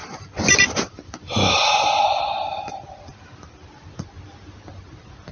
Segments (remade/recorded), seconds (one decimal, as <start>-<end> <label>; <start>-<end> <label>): 0.0-5.3 recorded